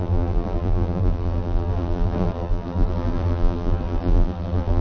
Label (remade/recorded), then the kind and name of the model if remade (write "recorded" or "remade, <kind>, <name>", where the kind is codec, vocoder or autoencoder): remade, vocoder, BigVGAN v2